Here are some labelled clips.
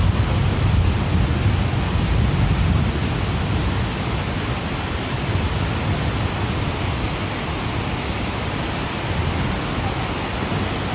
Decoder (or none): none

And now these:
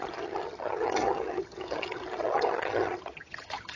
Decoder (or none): vocoder, HiFi-GAN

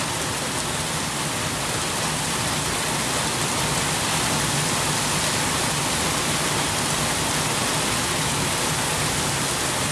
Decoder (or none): none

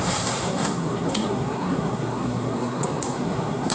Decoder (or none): codec, SNAC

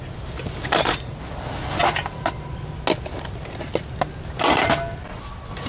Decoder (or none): none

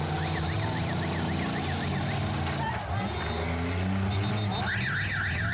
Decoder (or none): none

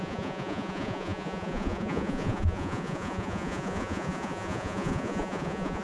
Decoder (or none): vocoder, Vocos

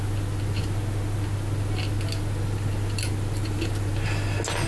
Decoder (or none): none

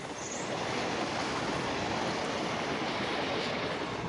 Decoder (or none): none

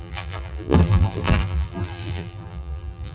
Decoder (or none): vocoder, BigVGAN v2